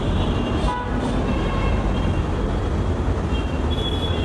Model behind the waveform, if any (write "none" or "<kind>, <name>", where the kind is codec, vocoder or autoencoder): none